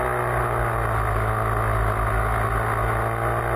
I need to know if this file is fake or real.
real